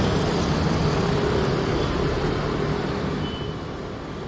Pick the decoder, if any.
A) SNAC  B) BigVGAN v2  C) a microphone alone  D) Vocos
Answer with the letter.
C